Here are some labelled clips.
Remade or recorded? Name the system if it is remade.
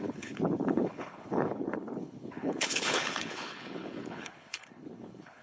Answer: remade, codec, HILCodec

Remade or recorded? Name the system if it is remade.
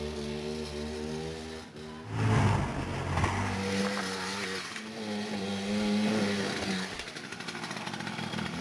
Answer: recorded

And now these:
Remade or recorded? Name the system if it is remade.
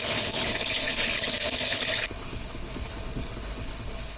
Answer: remade, codec, HILCodec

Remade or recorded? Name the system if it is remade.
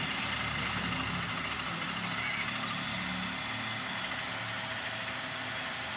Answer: recorded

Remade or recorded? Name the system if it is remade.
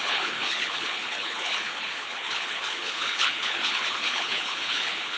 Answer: remade, codec, HILCodec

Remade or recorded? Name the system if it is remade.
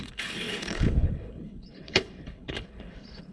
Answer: remade, codec, HILCodec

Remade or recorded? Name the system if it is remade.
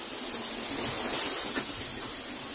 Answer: recorded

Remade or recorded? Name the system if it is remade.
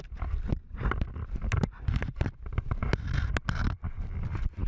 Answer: recorded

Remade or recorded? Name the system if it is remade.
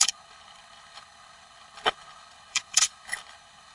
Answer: remade, codec, HILCodec